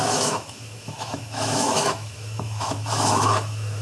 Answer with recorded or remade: remade